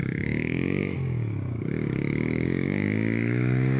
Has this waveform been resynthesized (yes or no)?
yes